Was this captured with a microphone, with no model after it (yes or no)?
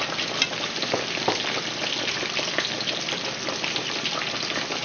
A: yes